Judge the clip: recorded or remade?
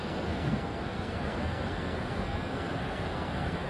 remade